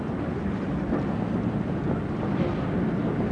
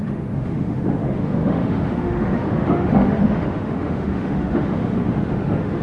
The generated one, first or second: second